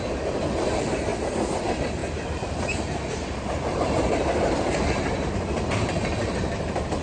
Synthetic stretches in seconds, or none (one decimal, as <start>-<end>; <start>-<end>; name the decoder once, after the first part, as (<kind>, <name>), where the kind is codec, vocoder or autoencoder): 0.0-1.1 (vocoder, BigVGAN v2); 1.6-7.0